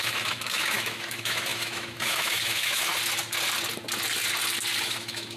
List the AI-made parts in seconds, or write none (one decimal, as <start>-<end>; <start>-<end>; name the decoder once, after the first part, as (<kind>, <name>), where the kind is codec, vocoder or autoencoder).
0.0-2.9 (autoencoder, DAC-VAE); 4.8-5.4